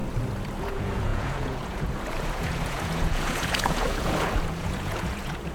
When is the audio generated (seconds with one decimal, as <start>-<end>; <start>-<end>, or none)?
0.6-5.5